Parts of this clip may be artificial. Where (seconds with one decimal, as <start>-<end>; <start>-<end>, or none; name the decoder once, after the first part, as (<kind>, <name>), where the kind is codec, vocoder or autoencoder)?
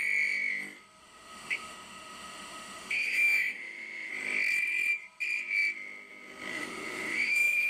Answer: 1.0-4.1 (autoencoder, DAC-VAE); 6.5-7.7